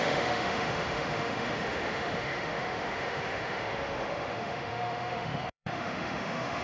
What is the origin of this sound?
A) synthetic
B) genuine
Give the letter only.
A